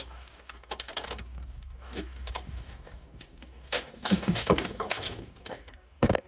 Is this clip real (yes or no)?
no